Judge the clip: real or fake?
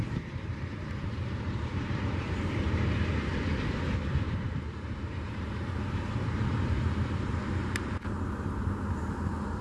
fake